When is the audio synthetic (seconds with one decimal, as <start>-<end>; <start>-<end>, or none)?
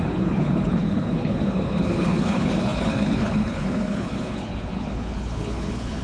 0.0-6.0